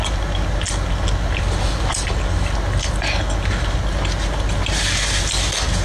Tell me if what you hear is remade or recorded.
recorded